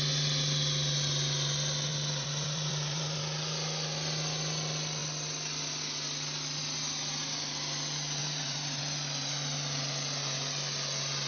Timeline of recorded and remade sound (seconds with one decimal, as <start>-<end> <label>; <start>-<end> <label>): 0.0-1.9 recorded; 1.9-3.2 remade; 3.2-8.2 recorded; 8.2-8.8 remade; 8.8-11.3 recorded